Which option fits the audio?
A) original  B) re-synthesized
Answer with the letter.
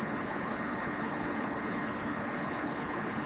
B